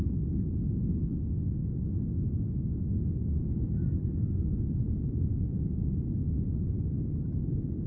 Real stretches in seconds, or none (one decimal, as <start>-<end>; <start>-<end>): 0.0-1.6; 2.6-3.2